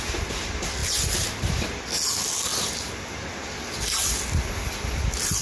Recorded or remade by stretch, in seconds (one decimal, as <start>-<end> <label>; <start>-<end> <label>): 0.0-5.4 recorded